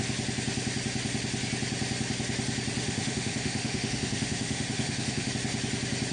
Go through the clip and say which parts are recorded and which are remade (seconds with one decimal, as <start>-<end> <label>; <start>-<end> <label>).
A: 0.0-2.8 recorded; 2.8-5.3 remade; 5.3-6.1 recorded